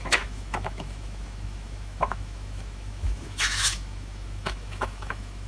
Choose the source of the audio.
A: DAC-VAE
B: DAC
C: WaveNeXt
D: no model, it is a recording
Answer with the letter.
A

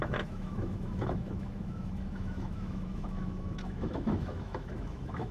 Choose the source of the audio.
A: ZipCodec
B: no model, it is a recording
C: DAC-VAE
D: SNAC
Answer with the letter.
C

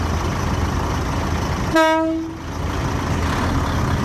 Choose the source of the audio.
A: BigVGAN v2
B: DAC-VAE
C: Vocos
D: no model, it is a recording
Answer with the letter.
D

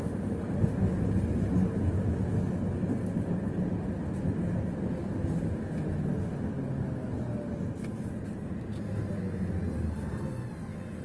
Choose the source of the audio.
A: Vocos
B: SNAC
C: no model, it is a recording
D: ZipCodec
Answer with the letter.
C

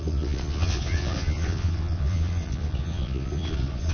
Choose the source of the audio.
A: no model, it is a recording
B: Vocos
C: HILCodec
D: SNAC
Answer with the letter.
B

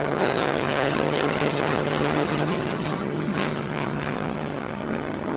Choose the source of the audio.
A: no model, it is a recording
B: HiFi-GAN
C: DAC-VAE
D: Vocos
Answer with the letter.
B